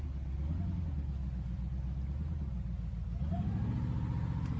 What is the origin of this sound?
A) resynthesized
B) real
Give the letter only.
B